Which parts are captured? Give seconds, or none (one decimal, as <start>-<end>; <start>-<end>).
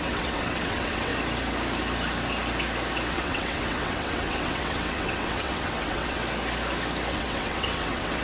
1.1-3.1; 6.2-7.1